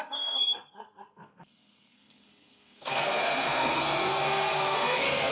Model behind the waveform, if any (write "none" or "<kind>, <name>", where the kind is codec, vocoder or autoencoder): codec, SNAC